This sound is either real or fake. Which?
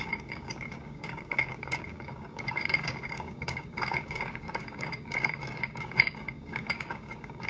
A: fake